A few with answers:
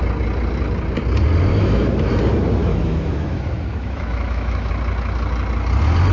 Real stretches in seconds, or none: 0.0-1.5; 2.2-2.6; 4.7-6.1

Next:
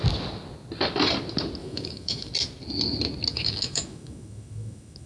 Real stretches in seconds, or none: 0.0-1.6; 2.3-3.3

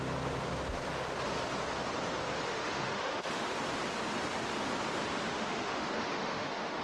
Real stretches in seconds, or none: 0.0-2.5; 3.6-5.3

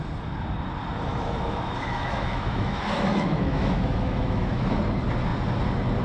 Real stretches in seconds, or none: 0.0-1.1; 4.7-6.0

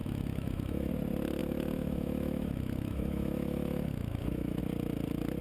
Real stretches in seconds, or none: 0.9-1.4; 4.6-5.4